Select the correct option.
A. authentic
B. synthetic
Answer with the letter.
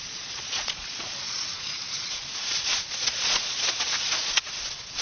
B